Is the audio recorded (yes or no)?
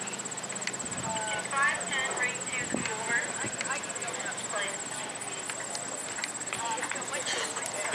yes